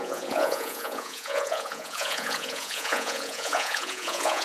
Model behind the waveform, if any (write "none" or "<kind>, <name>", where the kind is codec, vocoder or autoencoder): vocoder, Vocos